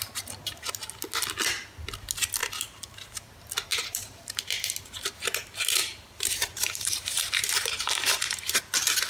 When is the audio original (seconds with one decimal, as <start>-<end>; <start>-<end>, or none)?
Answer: 0.0-2.4; 3.3-3.7; 8.6-9.1